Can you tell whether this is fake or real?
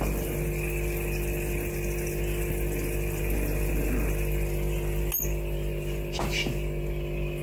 real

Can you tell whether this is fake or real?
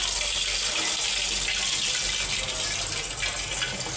real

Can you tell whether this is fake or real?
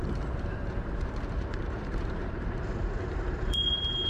fake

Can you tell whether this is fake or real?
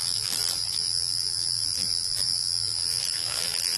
fake